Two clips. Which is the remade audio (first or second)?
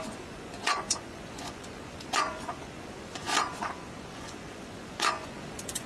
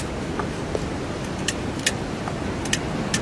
first